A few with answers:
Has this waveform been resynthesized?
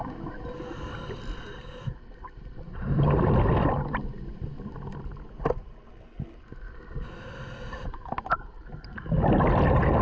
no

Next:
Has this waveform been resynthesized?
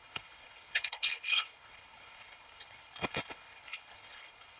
yes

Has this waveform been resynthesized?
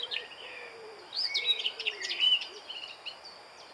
yes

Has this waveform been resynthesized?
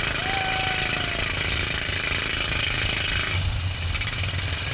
no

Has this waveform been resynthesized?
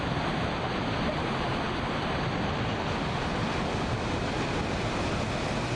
no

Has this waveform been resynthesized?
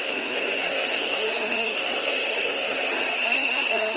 yes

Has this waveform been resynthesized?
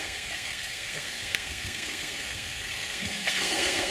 yes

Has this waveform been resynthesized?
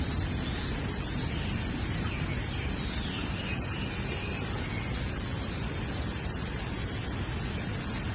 no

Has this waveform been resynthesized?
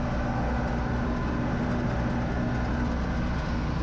no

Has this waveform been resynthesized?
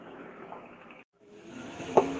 yes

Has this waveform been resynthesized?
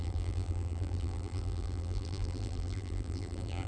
yes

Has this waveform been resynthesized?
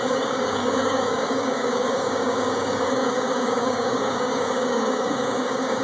yes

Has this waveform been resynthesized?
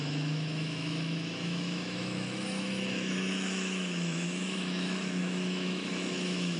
yes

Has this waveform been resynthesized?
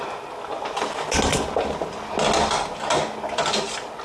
no